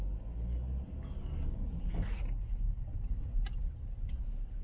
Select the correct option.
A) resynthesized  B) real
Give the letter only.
B